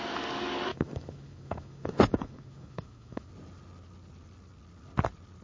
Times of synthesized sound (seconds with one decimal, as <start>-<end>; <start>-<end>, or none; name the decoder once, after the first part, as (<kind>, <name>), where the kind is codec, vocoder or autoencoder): 0.7-3.3 (autoencoder, DAC-VAE)